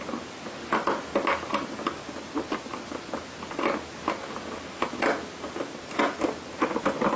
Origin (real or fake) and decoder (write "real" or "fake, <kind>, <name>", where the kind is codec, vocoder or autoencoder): real